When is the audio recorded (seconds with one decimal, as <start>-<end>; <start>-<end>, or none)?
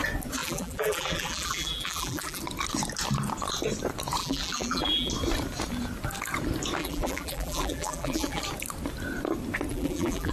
0.0-0.4; 2.4-4.2; 5.1-6.8; 8.4-9.7